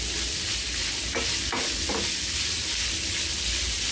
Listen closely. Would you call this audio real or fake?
real